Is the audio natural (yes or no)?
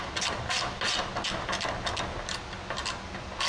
yes